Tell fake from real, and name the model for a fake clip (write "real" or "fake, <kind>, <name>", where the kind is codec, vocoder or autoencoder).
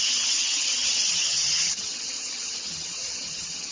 fake, vocoder, HiFi-GAN